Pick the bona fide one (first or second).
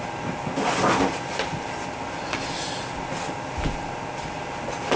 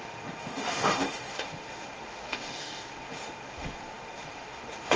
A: first